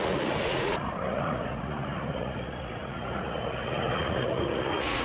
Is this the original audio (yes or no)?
no